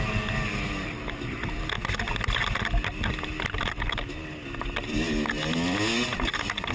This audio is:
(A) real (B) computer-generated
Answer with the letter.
A